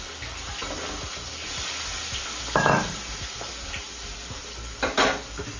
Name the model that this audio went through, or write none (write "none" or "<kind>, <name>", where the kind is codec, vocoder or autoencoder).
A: none